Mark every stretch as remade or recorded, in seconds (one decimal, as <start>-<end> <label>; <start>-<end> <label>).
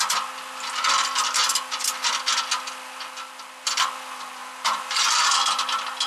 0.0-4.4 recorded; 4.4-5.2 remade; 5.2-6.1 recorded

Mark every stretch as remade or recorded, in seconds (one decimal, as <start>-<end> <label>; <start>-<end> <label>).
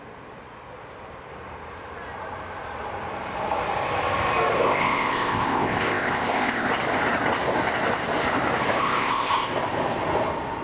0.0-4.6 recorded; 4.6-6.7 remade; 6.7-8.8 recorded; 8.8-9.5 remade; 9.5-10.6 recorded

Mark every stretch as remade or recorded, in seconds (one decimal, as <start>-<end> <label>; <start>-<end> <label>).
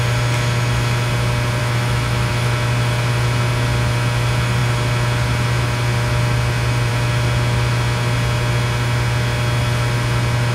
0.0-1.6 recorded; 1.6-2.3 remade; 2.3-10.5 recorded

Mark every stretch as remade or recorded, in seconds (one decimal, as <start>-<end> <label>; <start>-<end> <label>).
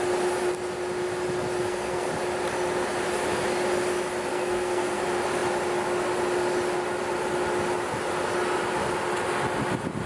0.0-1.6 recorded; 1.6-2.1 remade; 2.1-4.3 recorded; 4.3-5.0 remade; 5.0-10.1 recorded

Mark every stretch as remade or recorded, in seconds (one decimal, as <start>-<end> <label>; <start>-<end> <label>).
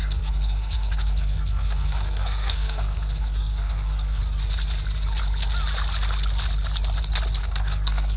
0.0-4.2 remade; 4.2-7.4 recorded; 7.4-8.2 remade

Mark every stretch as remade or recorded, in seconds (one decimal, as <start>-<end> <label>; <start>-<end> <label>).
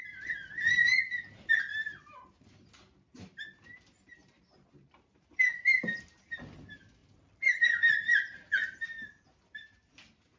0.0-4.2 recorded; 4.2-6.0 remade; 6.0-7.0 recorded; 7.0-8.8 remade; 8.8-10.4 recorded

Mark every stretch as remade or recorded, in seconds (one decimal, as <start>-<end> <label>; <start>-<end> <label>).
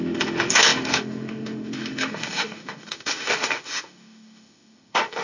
0.0-5.2 remade